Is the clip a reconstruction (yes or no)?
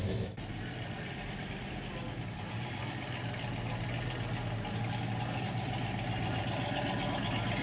no